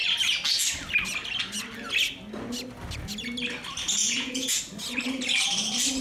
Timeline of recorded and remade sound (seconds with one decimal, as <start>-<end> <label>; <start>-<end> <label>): 0.0-4.0 recorded; 4.0-4.6 remade; 4.6-6.0 recorded